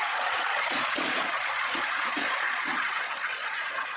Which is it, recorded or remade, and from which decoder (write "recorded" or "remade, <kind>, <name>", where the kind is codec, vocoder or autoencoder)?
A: remade, vocoder, Vocos